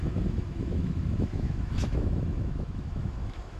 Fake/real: fake